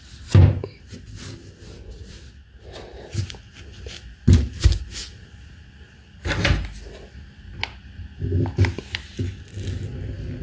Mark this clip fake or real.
real